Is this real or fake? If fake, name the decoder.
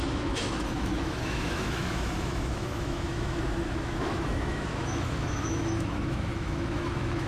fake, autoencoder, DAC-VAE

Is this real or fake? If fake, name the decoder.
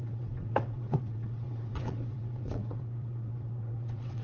fake, vocoder, WaveNeXt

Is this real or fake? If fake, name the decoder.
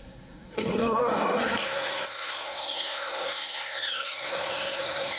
fake, codec, SNAC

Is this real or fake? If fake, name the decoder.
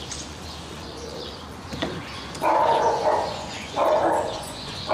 fake, vocoder, Vocos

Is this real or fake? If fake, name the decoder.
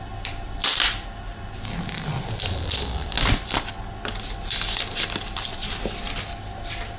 real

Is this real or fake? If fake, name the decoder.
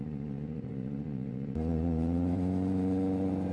fake, vocoder, Vocos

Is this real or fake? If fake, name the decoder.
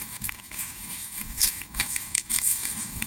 fake, codec, DAC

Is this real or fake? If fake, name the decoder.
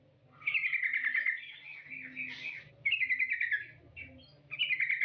real